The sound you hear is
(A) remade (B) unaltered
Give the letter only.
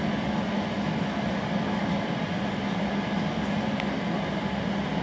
B